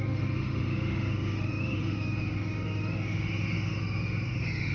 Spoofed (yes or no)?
yes